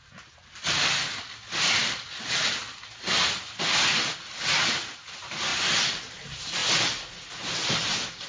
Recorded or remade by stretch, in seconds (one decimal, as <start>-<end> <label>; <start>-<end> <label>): 0.0-8.3 recorded